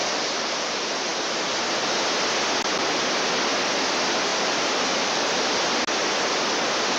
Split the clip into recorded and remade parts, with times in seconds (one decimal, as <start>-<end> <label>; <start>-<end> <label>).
0.0-0.7 remade; 0.7-4.3 recorded; 4.3-5.5 remade; 5.5-7.0 recorded